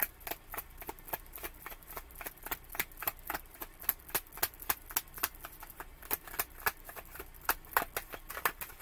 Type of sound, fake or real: real